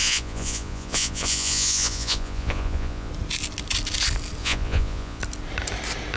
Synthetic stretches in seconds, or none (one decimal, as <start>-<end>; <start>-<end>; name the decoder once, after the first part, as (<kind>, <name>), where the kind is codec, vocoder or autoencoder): 0.0-3.1 (vocoder, Vocos); 4.4-5.2